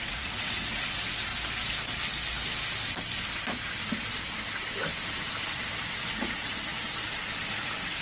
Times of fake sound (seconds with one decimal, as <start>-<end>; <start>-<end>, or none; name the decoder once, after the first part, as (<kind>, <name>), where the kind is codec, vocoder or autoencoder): 0.0-1.3 (vocoder, Vocos); 6.1-6.7; 7.5-8.0